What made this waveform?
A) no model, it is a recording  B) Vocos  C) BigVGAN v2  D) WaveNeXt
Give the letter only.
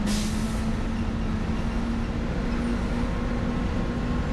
A